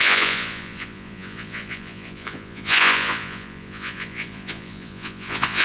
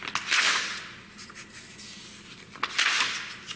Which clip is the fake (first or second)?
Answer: first